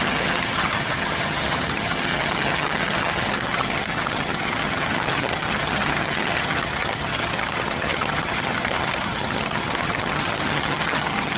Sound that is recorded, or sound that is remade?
remade